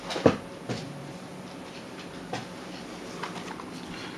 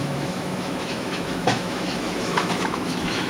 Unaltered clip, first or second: first